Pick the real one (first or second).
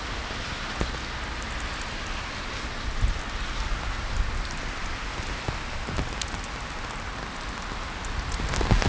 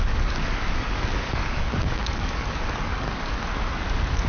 first